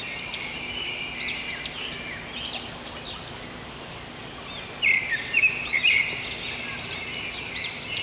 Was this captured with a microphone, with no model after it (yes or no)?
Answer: yes